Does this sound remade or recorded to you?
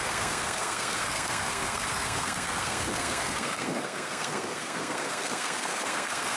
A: remade